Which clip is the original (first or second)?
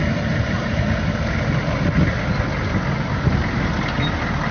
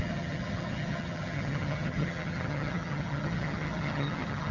first